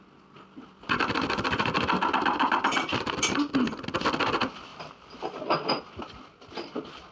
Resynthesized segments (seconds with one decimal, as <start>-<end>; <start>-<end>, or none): 4.7-5.4